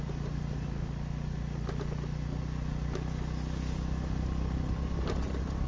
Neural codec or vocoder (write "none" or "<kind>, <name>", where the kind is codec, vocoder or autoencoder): none